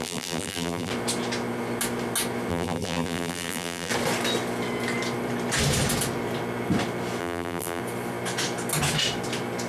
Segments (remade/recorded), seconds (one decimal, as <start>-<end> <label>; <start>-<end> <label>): 0.0-0.9 remade; 0.9-2.5 recorded; 2.5-3.9 remade; 3.9-7.2 recorded; 7.2-7.8 remade; 7.8-9.7 recorded